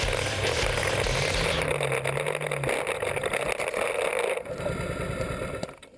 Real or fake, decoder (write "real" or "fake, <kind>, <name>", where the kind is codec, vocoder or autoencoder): real